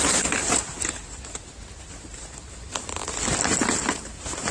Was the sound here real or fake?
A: real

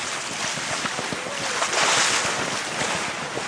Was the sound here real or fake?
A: real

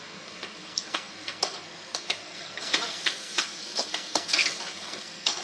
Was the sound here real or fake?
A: fake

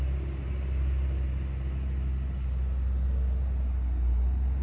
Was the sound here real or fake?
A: real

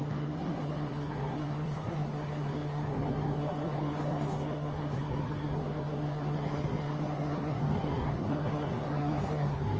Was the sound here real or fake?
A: fake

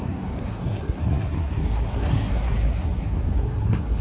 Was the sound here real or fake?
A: fake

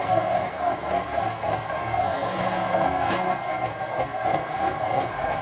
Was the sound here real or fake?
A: fake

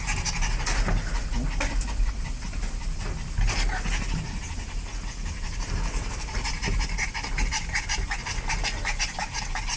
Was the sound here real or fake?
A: real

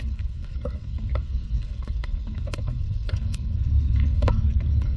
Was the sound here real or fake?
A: fake